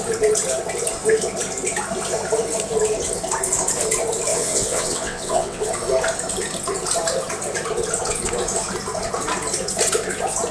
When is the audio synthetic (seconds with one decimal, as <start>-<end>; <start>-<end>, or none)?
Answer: 4.3-5.7